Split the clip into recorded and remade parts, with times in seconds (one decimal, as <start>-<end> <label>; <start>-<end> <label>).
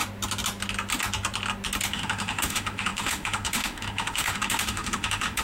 0.0-1.9 recorded; 1.9-5.4 remade